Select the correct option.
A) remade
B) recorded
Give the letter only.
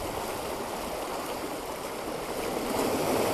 B